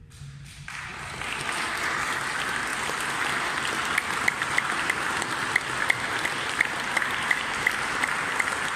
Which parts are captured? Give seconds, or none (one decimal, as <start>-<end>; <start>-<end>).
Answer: 0.0-8.8